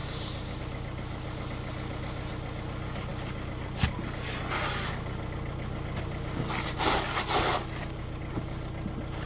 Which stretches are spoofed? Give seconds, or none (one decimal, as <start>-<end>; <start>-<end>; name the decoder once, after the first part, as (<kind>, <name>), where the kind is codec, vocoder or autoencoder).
none